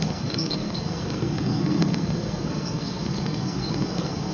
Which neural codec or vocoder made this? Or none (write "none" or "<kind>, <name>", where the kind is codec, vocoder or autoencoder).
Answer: codec, SNAC